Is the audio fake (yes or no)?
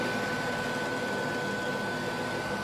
no